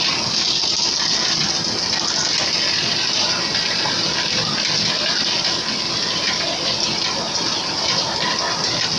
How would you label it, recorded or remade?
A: recorded